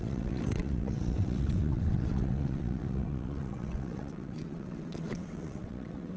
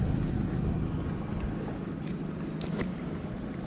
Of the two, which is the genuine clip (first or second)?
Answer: second